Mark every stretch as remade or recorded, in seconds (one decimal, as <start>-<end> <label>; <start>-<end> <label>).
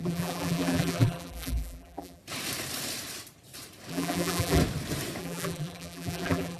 0.0-2.2 remade; 2.2-3.9 recorded; 3.9-4.6 remade; 4.6-5.2 recorded; 5.2-6.6 remade